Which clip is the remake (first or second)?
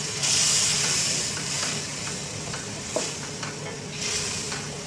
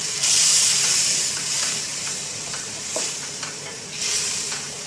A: second